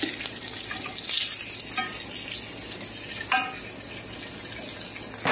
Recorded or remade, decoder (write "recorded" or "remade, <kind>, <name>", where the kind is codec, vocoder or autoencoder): recorded